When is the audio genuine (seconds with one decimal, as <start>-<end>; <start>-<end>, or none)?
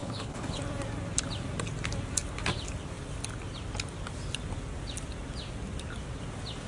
0.6-6.7